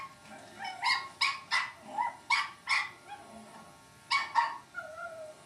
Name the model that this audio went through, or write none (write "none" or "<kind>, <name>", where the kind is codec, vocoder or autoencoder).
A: none